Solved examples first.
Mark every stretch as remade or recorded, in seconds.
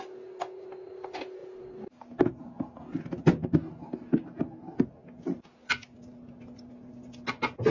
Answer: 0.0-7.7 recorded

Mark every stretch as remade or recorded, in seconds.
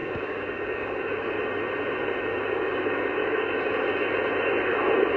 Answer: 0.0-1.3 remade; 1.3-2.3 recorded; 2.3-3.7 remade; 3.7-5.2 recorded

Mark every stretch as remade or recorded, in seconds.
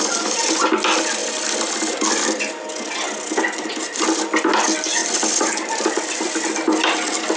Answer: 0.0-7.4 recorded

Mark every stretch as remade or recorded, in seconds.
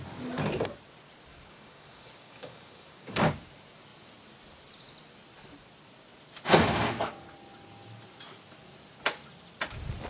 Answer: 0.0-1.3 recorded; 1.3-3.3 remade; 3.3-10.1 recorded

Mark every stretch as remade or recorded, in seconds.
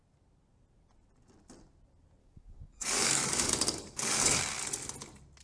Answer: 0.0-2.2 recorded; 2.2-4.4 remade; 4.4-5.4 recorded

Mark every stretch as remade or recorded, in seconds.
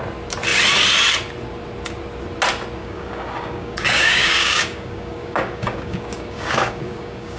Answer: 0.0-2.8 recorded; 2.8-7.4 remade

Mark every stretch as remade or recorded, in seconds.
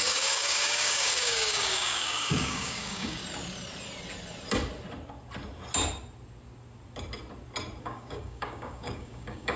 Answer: 0.0-3.2 remade; 3.2-7.8 recorded; 7.8-9.6 remade